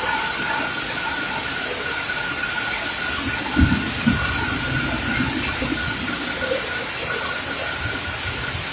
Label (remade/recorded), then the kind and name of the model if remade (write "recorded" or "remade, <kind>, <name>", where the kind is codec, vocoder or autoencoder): recorded